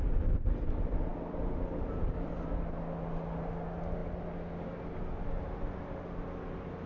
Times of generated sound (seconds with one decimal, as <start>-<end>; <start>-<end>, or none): none